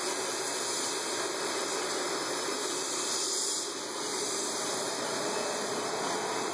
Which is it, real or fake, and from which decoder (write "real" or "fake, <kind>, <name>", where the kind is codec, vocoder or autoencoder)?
real